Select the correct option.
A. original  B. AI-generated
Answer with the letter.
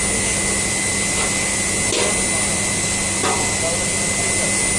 A